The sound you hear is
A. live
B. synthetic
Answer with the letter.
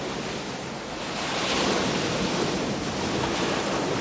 A